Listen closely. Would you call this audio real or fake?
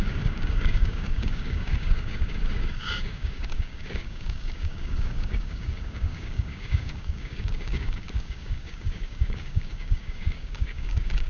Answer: fake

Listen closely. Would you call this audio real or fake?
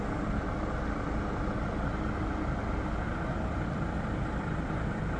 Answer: real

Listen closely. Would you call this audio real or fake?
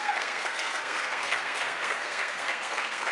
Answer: fake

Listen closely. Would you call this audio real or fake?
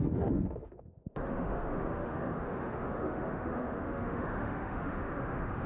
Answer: fake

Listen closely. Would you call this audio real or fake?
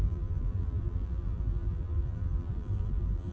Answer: fake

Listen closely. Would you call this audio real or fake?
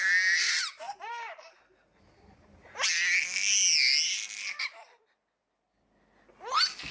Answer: real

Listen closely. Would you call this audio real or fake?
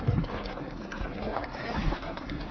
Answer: fake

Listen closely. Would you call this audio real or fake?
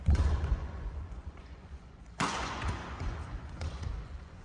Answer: fake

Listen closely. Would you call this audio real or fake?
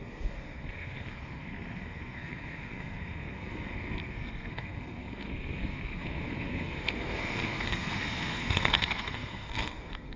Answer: fake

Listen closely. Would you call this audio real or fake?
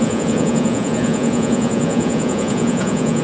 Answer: fake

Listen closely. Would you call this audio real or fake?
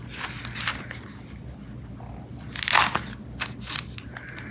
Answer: real